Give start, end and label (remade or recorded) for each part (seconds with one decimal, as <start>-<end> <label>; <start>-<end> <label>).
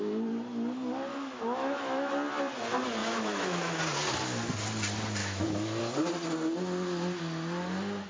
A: 0.0-1.1 recorded; 1.1-2.1 remade; 2.1-3.0 recorded; 3.0-3.8 remade; 3.8-5.2 recorded; 5.2-5.8 remade; 5.8-8.1 recorded